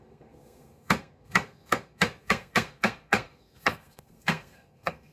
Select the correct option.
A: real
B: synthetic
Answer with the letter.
B